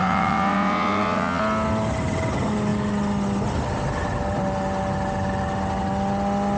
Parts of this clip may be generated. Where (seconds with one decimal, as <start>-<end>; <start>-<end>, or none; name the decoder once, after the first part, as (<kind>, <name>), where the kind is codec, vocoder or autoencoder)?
0.0-1.4 (vocoder, WaveNeXt)